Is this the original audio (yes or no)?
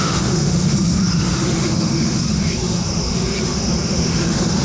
no